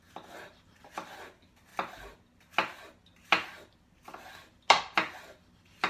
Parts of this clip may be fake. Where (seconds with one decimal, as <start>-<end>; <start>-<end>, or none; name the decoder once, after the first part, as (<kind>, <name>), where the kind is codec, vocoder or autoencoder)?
none